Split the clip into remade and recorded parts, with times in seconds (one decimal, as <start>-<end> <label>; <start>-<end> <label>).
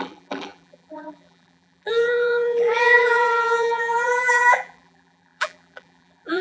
0.0-6.4 remade